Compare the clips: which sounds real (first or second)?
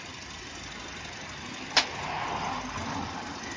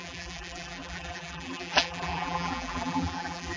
first